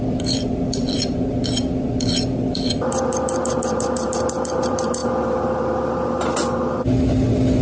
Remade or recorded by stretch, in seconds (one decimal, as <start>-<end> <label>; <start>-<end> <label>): 0.0-5.0 remade; 5.0-7.6 recorded